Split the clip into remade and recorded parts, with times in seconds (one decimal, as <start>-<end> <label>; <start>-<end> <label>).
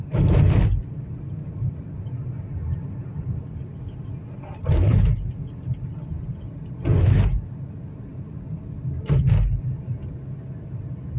0.0-11.2 recorded